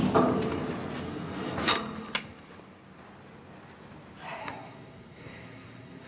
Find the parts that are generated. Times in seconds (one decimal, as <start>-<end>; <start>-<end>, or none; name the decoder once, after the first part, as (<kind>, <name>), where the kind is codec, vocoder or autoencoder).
4.4-6.1 (codec, SNAC)